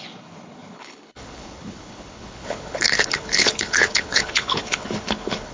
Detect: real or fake fake